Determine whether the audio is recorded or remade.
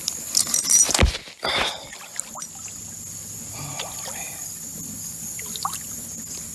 recorded